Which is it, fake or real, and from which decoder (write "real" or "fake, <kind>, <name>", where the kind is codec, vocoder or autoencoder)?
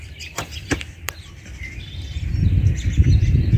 fake, vocoder, BigVGAN v2